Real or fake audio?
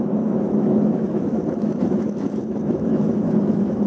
fake